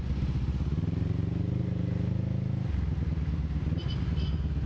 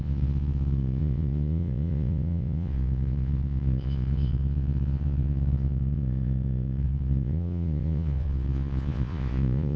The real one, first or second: first